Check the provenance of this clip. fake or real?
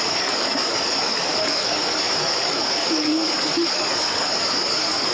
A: fake